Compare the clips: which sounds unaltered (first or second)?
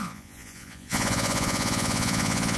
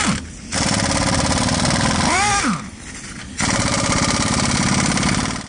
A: second